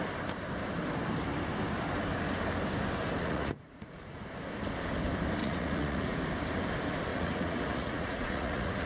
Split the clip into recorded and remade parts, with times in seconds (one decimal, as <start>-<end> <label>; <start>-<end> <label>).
0.0-3.2 recorded; 3.2-4.3 remade; 4.3-5.4 recorded; 5.4-6.2 remade; 6.2-7.1 recorded; 7.1-8.9 remade